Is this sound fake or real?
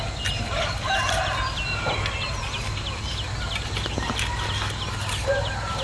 real